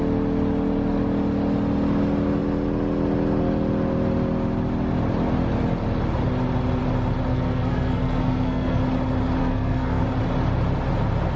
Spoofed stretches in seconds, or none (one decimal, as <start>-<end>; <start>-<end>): 7.3-8.8; 9.4-10.0